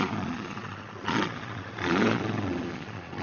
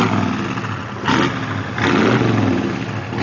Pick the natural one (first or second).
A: second